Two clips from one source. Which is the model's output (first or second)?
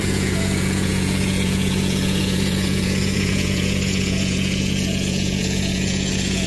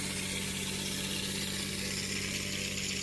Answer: first